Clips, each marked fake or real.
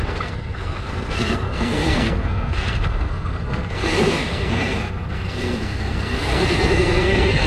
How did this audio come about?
fake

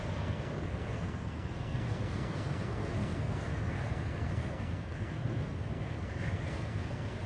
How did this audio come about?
fake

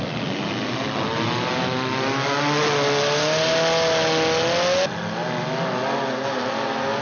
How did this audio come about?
real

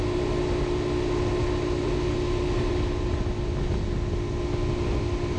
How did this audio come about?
real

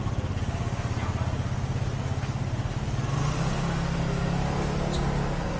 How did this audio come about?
real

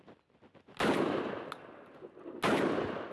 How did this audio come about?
real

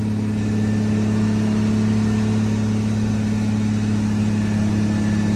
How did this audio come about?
real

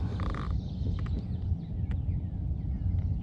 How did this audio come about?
real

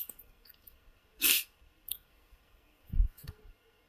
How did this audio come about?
fake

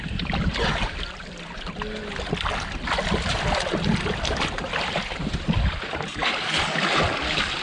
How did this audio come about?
real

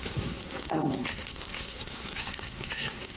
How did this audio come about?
fake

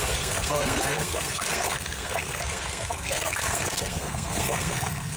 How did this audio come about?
fake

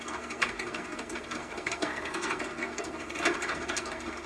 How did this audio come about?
fake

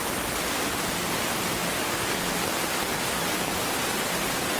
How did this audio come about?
real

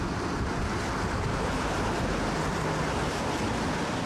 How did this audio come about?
real